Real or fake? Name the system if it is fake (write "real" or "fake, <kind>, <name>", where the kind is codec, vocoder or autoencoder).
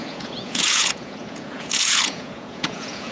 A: fake, vocoder, Vocos